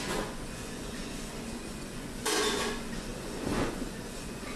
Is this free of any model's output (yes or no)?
no